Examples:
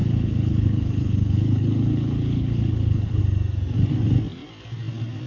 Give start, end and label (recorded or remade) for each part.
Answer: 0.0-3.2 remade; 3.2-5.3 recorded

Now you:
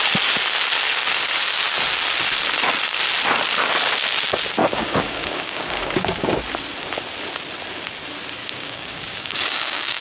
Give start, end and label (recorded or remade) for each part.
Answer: 0.0-4.6 recorded; 4.6-6.4 remade; 6.4-8.4 recorded; 8.4-10.0 remade

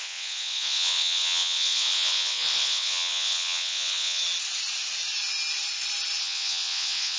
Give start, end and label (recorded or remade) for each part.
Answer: 0.0-4.2 remade; 4.2-6.2 recorded; 6.2-7.2 remade

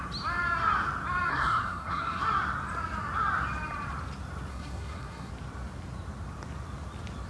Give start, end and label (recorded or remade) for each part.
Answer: 0.0-1.3 recorded; 1.3-2.2 remade; 2.2-4.5 recorded; 4.5-5.3 remade; 5.3-7.3 recorded

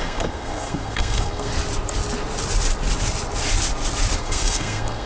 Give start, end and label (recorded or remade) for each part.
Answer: 0.0-1.5 remade; 1.5-4.2 recorded; 4.2-5.1 remade